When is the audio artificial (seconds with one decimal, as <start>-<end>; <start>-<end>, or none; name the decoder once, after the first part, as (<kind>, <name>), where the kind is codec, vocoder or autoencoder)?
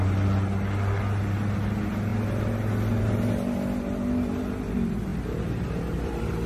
none